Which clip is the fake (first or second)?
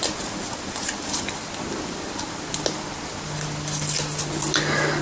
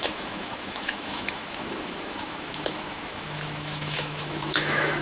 second